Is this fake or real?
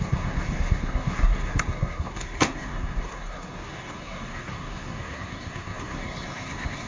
fake